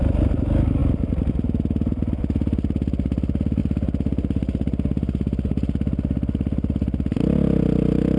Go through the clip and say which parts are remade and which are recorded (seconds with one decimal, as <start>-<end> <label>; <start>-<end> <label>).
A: 0.0-8.2 recorded